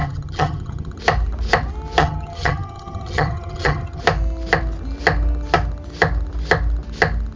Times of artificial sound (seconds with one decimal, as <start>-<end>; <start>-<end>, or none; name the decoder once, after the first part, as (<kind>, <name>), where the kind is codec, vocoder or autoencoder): 0.0-1.0 (vocoder, HiFi-GAN); 2.0-4.0